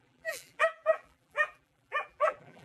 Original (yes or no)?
no